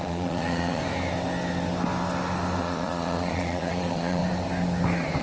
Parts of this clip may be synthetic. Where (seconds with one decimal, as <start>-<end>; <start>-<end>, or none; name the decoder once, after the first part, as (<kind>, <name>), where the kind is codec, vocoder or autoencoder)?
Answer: 0.0-0.8 (vocoder, Vocos); 2.6-4.2